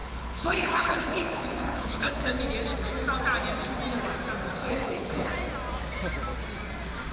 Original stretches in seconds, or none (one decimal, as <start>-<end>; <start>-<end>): 2.4-4.6; 5.3-7.1